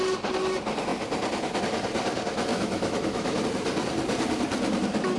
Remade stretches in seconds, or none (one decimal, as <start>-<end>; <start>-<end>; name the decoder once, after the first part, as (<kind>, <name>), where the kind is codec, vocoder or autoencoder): 2.5-3.4 (autoencoder, DAC-VAE)